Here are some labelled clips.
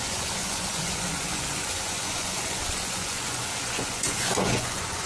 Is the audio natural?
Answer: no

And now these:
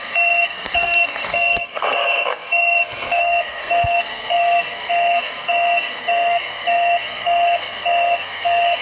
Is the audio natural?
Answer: no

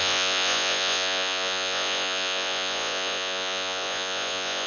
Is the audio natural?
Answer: no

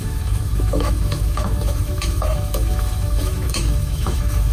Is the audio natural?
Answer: no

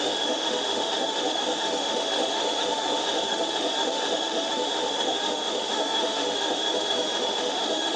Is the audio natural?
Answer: no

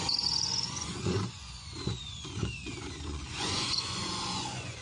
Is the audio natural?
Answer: no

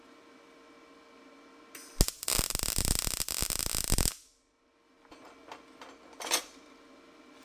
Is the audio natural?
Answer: yes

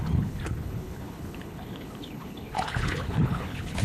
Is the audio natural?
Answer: no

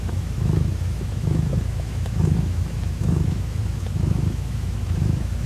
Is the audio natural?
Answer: no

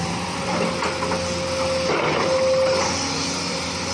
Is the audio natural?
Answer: yes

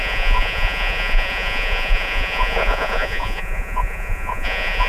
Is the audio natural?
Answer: no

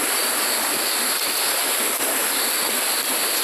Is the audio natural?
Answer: yes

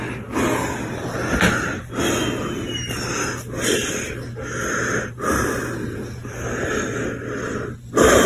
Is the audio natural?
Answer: yes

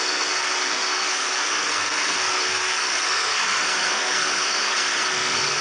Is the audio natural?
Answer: no